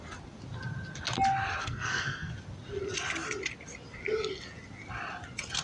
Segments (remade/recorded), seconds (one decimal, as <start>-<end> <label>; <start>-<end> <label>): 0.0-1.6 recorded; 1.6-2.3 remade; 2.3-5.6 recorded